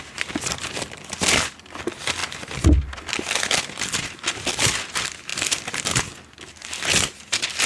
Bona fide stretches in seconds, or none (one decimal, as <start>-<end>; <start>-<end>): 0.0-7.7